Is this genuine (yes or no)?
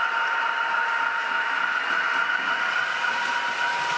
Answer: yes